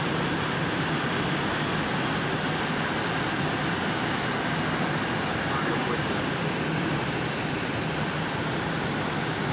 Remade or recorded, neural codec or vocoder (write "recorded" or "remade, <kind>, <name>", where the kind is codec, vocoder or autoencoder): recorded